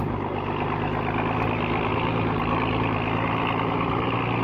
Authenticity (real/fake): real